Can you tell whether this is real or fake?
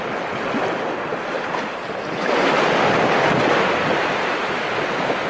real